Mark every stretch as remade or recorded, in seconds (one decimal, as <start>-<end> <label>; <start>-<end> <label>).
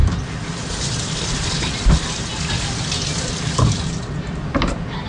0.0-2.3 remade; 2.3-3.3 recorded; 3.3-5.1 remade